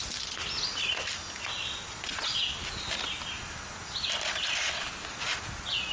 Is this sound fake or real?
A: real